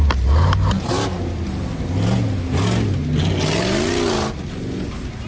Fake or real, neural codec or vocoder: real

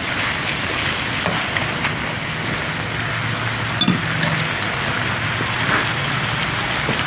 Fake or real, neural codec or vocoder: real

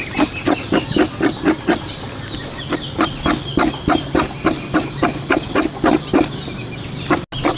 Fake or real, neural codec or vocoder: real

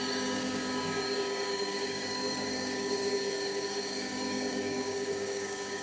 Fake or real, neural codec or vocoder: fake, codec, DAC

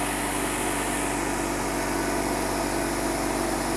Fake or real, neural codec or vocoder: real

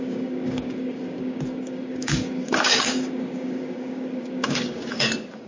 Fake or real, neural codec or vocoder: fake, codec, DAC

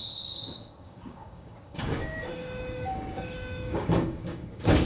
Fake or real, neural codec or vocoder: fake, codec, DAC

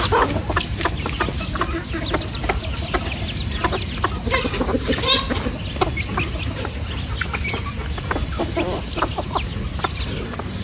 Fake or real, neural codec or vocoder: real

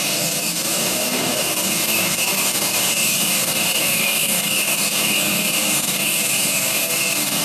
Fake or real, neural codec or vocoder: fake, codec, DAC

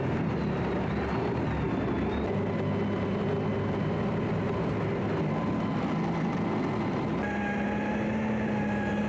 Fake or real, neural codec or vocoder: real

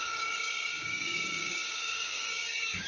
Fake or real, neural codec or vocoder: fake, codec, DAC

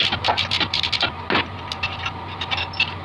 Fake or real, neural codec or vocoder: real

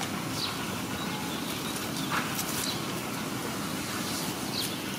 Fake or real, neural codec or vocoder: real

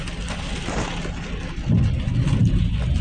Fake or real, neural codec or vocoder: real